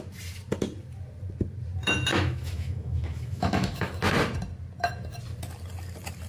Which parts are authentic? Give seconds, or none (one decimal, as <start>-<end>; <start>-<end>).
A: 0.0-2.1; 4.0-6.3